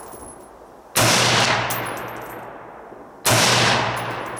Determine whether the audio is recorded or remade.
recorded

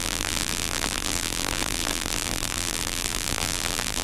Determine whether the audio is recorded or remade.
remade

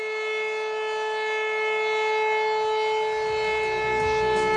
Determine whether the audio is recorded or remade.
recorded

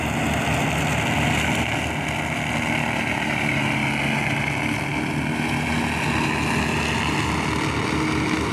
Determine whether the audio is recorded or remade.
recorded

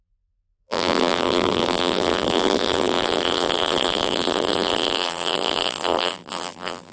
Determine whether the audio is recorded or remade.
remade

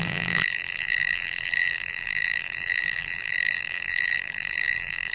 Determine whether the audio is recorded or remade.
remade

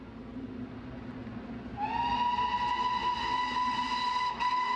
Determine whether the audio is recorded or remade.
recorded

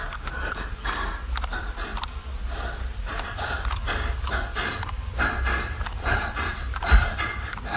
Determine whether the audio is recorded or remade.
remade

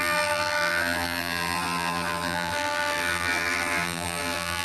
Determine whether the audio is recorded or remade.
remade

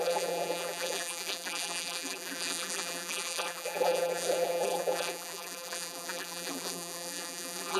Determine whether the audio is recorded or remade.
remade